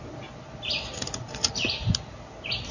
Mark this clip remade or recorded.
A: recorded